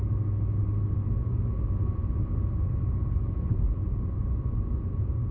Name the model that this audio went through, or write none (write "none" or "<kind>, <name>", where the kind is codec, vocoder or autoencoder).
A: none